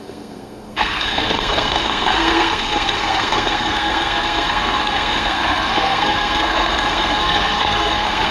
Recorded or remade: remade